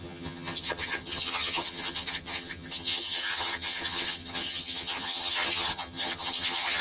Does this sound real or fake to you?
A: fake